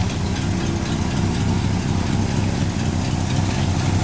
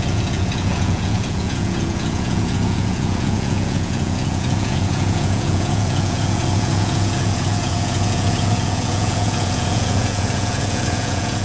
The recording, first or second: first